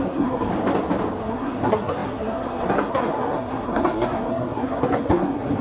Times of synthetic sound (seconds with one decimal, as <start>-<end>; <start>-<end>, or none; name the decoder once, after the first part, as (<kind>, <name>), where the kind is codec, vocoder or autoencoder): 0.0-0.5 (codec, SNAC); 1.2-5.6